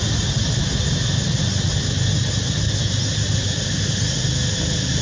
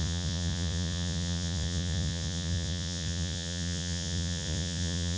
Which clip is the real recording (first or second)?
first